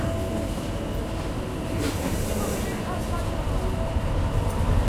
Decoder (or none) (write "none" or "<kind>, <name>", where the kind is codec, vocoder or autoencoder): none